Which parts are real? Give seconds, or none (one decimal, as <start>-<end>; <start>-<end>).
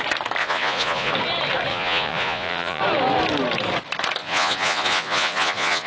0.0-0.4; 1.1-1.7; 2.8-4.2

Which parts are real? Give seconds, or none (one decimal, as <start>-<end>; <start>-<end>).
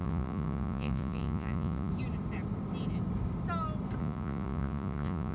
1.9-4.0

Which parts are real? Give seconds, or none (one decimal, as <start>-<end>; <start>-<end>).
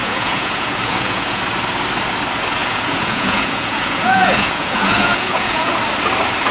1.4-2.6; 5.7-6.5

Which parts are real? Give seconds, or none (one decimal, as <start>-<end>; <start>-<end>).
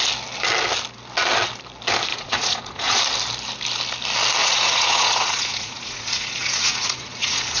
0.0-2.1; 3.0-4.4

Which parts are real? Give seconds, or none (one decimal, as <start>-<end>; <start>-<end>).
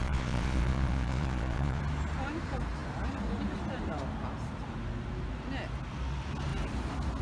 1.8-7.2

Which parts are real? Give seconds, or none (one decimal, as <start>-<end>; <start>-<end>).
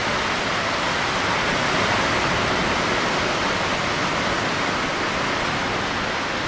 0.0-6.5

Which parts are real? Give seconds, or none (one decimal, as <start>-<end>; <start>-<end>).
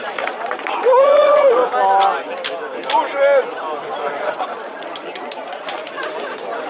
1.6-4.2; 5.8-6.7